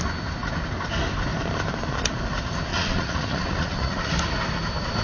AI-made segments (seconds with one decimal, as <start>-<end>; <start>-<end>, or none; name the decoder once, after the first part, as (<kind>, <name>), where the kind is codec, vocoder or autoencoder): 2.7-4.1 (vocoder, Vocos)